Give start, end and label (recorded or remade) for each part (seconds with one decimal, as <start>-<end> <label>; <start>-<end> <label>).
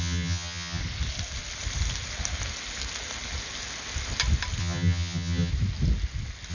0.0-0.8 remade; 0.8-4.6 recorded; 4.6-5.5 remade; 5.5-6.5 recorded